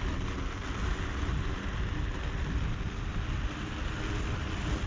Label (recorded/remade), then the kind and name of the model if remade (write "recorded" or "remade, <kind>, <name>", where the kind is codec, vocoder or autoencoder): recorded